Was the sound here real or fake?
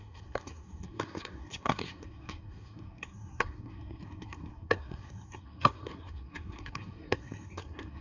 fake